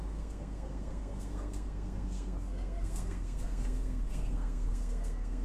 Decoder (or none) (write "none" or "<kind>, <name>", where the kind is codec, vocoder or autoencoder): codec, SNAC